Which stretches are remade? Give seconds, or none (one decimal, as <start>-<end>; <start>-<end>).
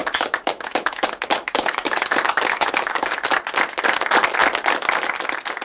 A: 0.0-3.4